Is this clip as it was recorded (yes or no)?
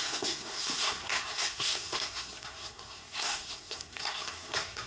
no